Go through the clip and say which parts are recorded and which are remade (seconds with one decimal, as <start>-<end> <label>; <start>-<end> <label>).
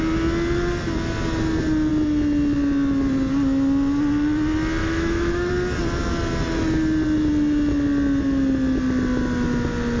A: 0.0-4.8 recorded; 4.8-5.5 remade; 5.5-10.0 recorded